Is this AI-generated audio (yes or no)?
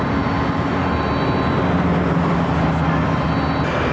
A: no